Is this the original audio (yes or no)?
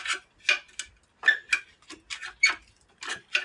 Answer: yes